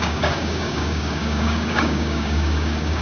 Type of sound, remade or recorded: remade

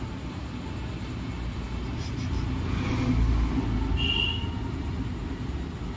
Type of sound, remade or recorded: recorded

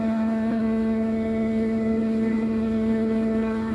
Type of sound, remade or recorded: remade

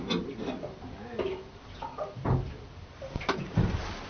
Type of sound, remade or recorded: recorded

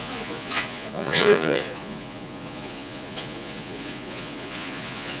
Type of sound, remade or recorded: remade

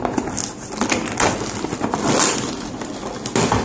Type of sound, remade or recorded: recorded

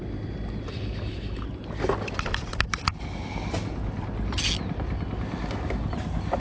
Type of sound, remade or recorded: recorded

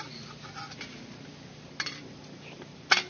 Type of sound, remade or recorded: recorded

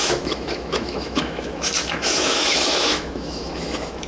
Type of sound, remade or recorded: remade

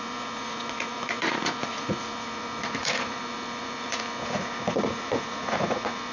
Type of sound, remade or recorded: remade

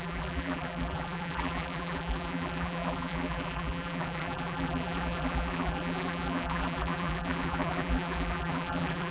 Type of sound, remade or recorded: remade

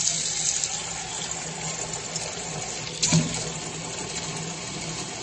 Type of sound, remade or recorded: recorded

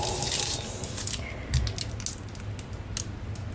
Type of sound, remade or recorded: recorded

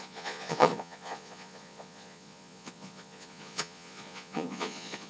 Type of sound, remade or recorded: remade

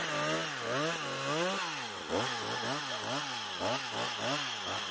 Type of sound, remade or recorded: recorded